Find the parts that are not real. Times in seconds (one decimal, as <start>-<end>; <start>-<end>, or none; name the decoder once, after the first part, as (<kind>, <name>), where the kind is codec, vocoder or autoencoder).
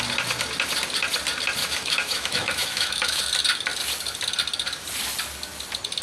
1.6-3.2 (autoencoder, DAC-VAE)